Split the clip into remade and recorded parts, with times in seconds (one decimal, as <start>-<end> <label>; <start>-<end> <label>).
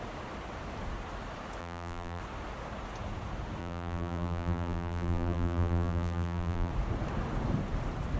0.0-1.6 recorded; 1.6-2.2 remade; 2.2-3.6 recorded; 3.6-6.7 remade; 6.7-8.2 recorded